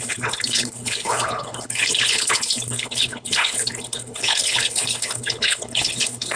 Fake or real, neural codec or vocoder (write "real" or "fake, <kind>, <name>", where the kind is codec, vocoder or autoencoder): fake, codec, HILCodec